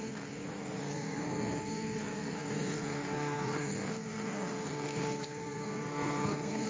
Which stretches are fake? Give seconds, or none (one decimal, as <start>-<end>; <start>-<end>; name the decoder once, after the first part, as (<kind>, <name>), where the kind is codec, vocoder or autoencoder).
0.0-6.7 (codec, SNAC)